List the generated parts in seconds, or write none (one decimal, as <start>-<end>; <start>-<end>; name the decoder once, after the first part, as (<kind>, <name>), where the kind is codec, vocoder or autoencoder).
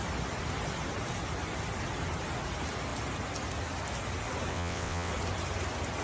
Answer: 4.5-5.1 (vocoder, WaveNeXt)